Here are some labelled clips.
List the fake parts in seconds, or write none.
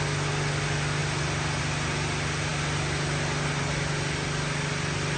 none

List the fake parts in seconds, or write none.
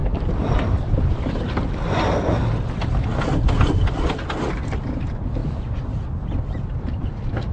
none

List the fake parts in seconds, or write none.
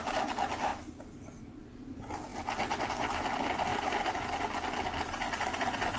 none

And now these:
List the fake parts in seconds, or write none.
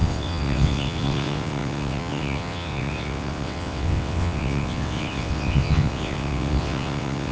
0.0-7.3 (vocoder, WaveNeXt)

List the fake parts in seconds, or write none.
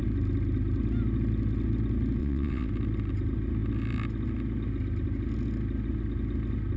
2.2-2.7 (vocoder, WaveNeXt)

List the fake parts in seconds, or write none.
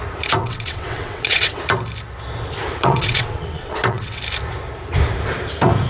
0.4-1.6 (vocoder, WaveNeXt); 2.8-4.2